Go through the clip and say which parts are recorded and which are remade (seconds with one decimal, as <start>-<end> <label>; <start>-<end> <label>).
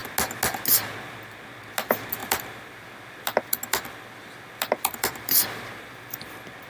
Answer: 0.0-2.2 recorded; 2.2-6.2 remade; 6.2-6.7 recorded